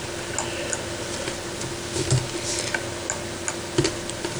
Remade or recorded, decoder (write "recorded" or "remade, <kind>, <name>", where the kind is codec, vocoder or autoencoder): recorded